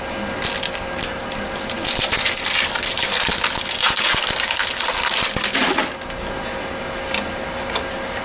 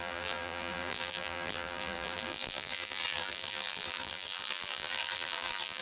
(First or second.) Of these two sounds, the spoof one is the second